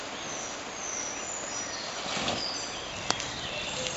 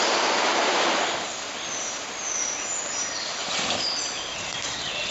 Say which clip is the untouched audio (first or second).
first